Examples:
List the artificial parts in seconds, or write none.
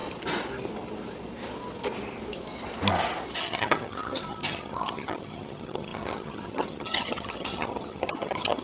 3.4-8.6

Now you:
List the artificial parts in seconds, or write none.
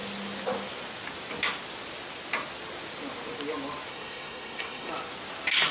3.9-4.9